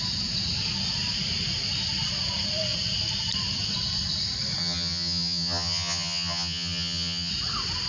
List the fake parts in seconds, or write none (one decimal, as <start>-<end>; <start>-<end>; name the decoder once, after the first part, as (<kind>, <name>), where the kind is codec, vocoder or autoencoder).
4.6-7.3 (vocoder, HiFi-GAN)